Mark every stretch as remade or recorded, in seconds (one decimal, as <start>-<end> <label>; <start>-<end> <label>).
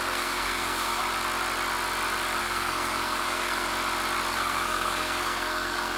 0.0-1.0 remade; 1.0-2.4 recorded; 2.4-3.7 remade; 3.7-4.3 recorded; 4.3-6.0 remade